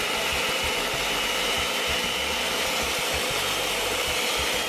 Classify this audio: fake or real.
real